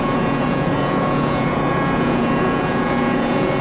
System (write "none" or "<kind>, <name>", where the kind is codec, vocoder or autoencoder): vocoder, Vocos